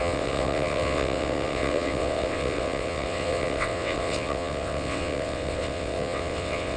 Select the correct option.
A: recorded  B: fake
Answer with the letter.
B